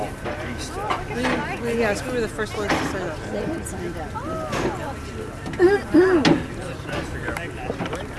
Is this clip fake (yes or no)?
no